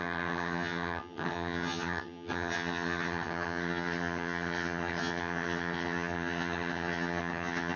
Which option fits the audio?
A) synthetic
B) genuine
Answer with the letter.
A